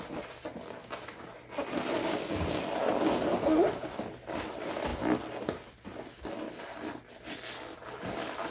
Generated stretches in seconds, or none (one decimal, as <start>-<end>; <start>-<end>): 2.0-2.6